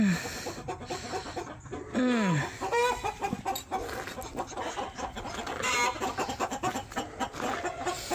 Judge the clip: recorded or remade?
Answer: recorded